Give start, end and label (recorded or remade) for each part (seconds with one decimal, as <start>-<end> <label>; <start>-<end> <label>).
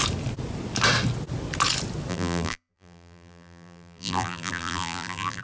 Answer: 0.0-2.1 recorded; 2.1-5.4 remade